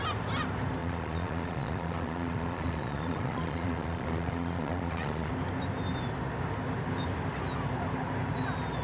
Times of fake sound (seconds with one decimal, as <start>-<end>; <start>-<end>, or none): 0.8-5.3